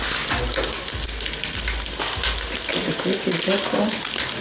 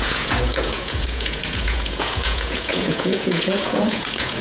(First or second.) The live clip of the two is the first